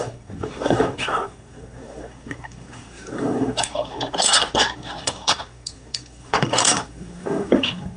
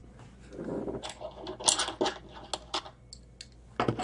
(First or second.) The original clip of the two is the second